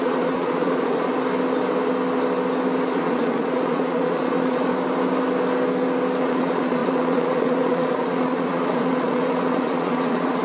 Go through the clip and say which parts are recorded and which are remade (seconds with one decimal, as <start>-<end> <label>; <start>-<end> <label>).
0.0-1.1 remade; 1.1-2.9 recorded; 2.9-4.7 remade; 4.7-6.2 recorded; 6.2-10.4 remade